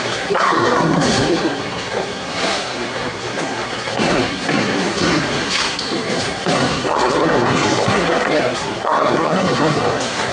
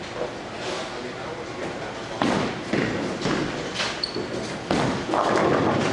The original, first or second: second